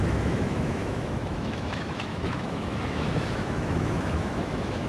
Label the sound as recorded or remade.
remade